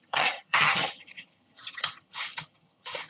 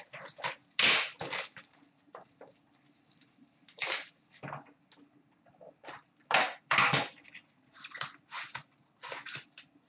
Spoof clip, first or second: first